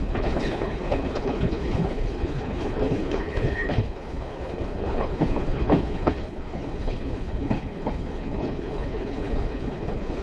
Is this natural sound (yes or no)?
no